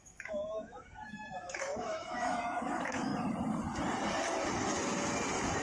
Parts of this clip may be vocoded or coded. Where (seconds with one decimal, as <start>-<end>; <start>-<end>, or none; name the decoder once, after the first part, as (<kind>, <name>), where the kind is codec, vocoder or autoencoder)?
0.0-3.1 (autoencoder, DAC-VAE)